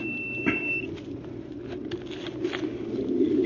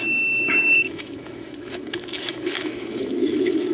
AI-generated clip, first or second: second